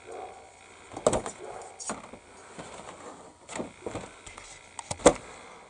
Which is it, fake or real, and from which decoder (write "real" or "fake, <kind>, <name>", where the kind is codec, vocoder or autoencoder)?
real